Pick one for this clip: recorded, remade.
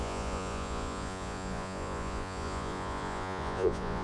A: remade